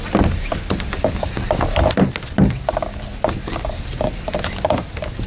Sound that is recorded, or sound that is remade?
recorded